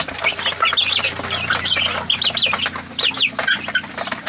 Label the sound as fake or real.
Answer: real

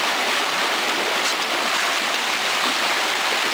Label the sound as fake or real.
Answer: real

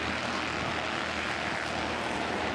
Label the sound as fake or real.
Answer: real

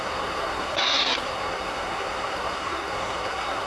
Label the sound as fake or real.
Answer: fake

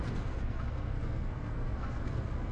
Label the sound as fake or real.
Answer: fake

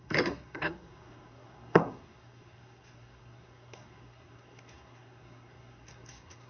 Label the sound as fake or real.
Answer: fake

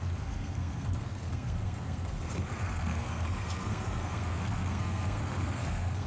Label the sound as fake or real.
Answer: fake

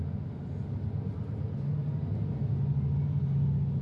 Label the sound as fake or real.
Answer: real